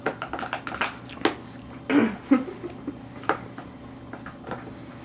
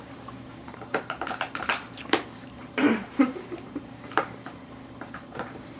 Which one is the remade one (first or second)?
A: second